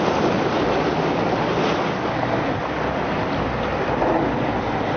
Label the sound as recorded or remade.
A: recorded